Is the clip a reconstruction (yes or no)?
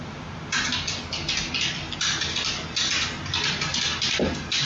no